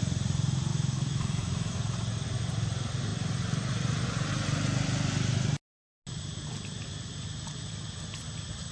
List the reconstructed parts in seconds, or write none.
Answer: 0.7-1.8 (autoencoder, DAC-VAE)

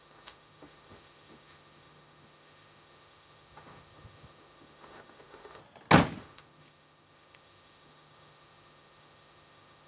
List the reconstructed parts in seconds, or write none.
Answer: 0.0-5.6 (autoencoder, DAC-VAE); 6.2-9.9

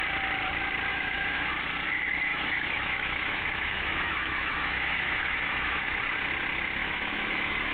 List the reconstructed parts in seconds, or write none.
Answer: 0.9-1.5 (autoencoder, DAC-VAE); 2.3-6.0; 6.8-7.7

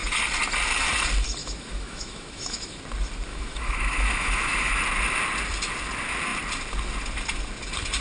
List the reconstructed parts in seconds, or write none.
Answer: 1.4-2.8 (autoencoder, DAC-VAE); 3.3-4.7